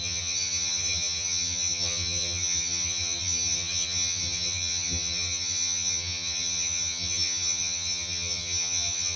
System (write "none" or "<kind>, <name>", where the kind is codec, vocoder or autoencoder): vocoder, HiFi-GAN